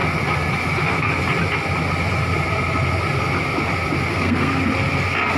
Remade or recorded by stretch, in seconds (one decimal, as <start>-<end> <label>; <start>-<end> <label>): 0.0-4.1 recorded; 4.1-4.6 remade; 4.6-5.4 recorded

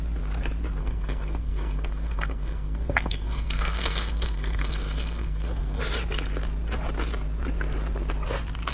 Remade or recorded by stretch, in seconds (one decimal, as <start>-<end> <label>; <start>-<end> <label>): 0.0-0.8 recorded; 0.8-5.8 remade; 5.8-8.7 recorded

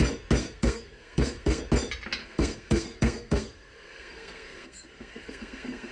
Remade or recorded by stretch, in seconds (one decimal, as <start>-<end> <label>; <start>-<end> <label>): 0.0-0.4 recorded; 0.4-1.6 remade; 1.6-2.2 recorded; 2.2-5.9 remade

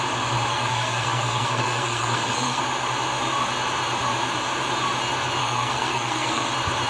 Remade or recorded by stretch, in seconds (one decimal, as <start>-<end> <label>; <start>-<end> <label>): 0.0-0.5 recorded; 0.5-2.6 remade; 2.6-5.4 recorded; 5.4-6.5 remade; 6.5-6.9 recorded

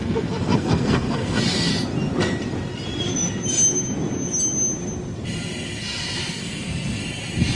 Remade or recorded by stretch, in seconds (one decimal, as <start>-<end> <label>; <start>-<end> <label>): 0.0-1.7 remade; 1.7-6.3 recorded; 6.3-7.0 remade; 7.0-7.6 recorded

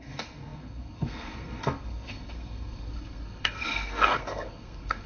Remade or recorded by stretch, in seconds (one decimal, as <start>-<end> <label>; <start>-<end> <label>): 0.0-5.1 remade

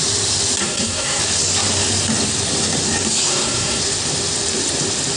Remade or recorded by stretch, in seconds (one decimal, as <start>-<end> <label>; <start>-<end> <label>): 0.0-0.6 recorded; 0.6-1.2 remade; 1.2-3.3 recorded; 3.3-3.8 remade; 3.8-5.2 recorded

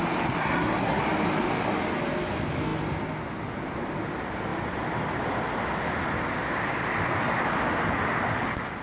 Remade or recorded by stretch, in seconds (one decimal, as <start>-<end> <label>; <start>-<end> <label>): 0.0-0.4 recorded; 0.4-1.0 remade; 1.0-8.8 recorded